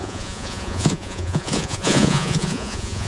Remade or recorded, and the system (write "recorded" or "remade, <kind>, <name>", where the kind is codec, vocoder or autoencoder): remade, vocoder, Vocos